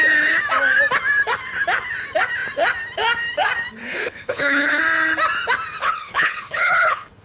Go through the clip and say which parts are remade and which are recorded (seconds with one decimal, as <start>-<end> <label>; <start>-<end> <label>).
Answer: 0.0-3.8 recorded; 3.8-4.8 remade; 4.8-5.8 recorded; 5.8-7.2 remade